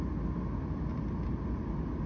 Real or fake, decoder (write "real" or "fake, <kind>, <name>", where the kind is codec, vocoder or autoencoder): real